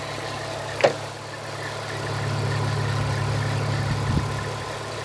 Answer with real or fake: real